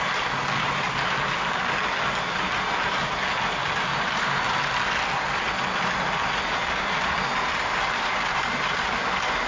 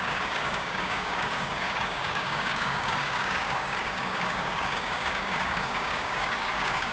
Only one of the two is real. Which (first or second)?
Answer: first